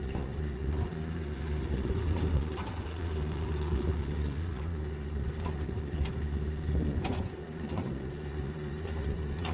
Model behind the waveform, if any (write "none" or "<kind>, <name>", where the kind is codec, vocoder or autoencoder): vocoder, Vocos